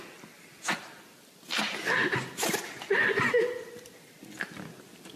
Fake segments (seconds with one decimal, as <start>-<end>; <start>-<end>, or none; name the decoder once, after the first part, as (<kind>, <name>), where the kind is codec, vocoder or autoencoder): none